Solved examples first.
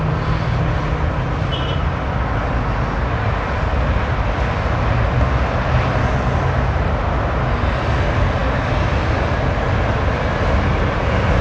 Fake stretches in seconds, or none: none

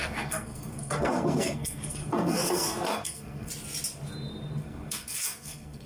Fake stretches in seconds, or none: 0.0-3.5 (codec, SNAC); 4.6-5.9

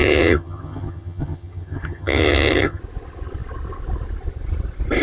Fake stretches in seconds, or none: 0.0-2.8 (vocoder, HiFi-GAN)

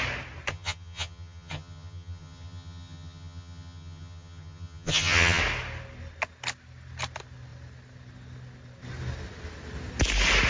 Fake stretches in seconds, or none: 0.5-5.4 (vocoder, HiFi-GAN)